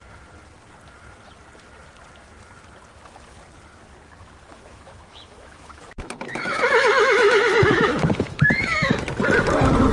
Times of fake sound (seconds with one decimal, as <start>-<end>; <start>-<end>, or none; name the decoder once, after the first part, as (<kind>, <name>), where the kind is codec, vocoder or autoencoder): 4.5-9.0 (autoencoder, DAC-VAE)